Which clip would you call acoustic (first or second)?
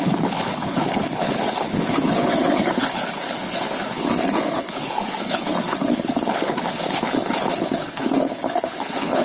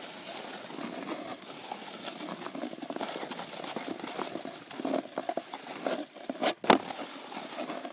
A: second